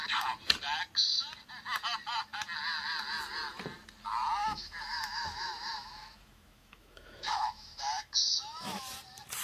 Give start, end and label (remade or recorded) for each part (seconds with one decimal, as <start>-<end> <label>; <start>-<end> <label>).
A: 0.0-4.4 recorded; 4.4-8.8 remade; 8.8-9.4 recorded